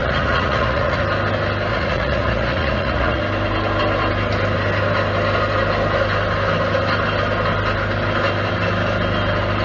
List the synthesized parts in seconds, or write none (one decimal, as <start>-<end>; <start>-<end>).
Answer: 0.0-1.0; 1.7-3.2